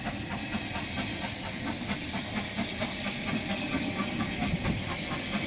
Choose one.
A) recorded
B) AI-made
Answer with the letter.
A